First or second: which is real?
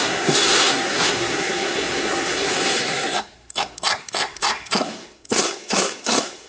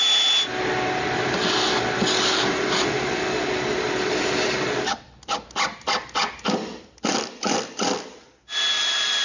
second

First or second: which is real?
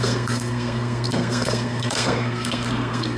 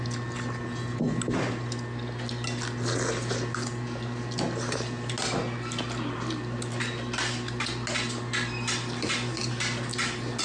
second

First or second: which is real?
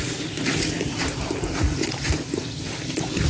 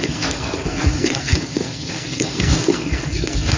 first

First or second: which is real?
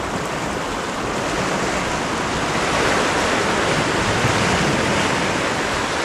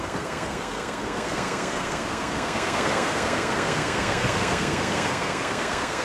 first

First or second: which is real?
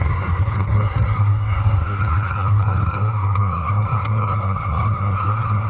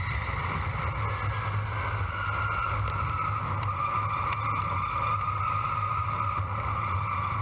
second